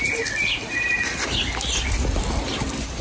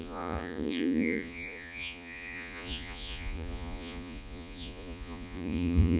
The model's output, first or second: second